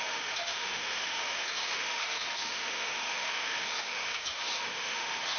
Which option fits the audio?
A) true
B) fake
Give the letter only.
B